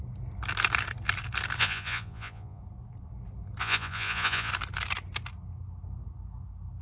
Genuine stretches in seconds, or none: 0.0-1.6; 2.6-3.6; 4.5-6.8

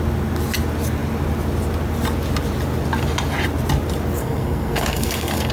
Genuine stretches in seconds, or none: 0.0-4.2